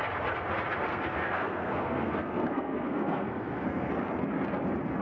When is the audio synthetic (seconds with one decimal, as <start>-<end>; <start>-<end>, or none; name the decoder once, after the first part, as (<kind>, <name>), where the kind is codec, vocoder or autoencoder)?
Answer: 0.9-3.9 (codec, SNAC)